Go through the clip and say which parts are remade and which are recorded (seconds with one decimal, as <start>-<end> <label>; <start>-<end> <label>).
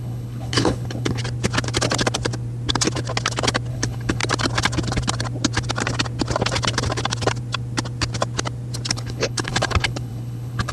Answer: 0.0-1.2 remade; 1.2-3.7 recorded; 3.7-4.2 remade; 4.2-8.9 recorded; 8.9-10.7 remade